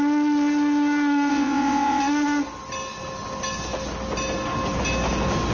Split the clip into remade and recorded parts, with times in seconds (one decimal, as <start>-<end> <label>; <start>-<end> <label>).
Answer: 0.0-1.3 recorded; 1.3-2.0 remade; 2.0-5.5 recorded